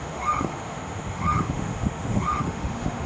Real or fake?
fake